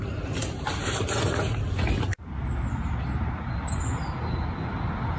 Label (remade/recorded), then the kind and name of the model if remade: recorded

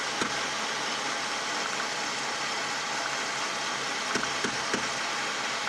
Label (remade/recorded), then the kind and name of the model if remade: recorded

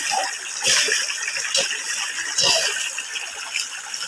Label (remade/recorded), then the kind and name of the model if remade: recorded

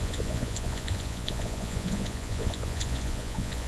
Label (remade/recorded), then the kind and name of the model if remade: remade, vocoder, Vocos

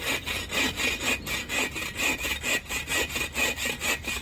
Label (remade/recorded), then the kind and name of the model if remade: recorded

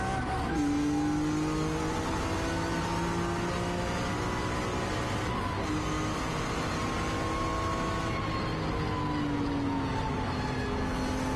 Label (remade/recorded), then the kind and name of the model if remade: recorded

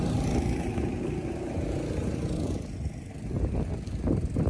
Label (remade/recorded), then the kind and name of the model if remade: recorded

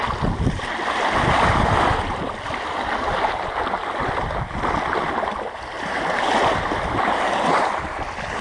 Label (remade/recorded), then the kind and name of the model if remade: recorded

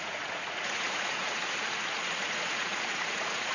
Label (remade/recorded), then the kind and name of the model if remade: remade, vocoder, Vocos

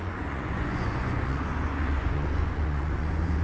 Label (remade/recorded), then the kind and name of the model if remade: remade, vocoder, Vocos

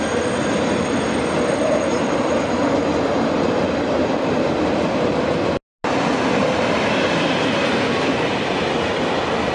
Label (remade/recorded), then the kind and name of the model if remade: recorded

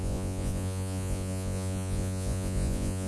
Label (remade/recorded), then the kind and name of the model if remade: remade, vocoder, Vocos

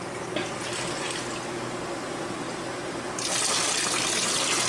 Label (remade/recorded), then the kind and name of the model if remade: recorded